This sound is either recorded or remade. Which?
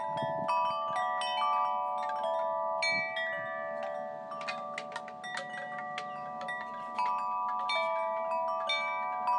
recorded